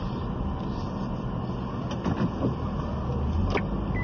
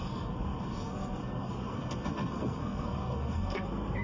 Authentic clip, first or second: first